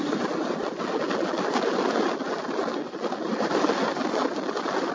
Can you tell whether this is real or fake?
real